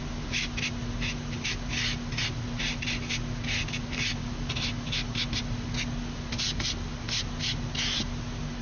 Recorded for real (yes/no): yes